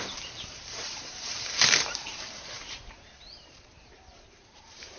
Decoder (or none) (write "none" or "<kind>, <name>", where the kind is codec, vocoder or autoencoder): vocoder, BigVGAN v2